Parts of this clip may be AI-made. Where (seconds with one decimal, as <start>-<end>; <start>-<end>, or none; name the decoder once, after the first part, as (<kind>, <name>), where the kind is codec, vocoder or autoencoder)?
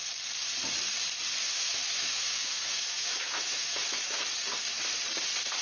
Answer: 1.4-4.2 (autoencoder, DAC-VAE)